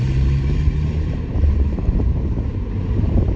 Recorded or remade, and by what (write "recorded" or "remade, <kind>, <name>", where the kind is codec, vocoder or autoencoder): remade, vocoder, BigVGAN v2